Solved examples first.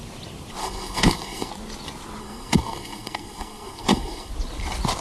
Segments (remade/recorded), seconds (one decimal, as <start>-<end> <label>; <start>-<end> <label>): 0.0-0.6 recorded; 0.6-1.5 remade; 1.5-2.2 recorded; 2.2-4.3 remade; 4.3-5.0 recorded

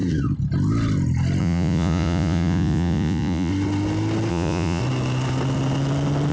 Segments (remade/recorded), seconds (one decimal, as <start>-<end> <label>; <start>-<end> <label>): 0.0-1.4 recorded; 1.4-3.5 remade; 3.5-4.3 recorded; 4.3-4.8 remade; 4.8-6.3 recorded

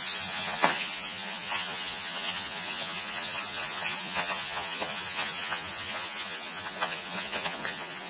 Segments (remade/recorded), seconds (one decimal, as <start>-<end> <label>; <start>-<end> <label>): 0.0-8.1 remade